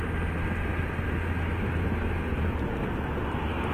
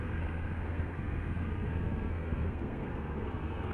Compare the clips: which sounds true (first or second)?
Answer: first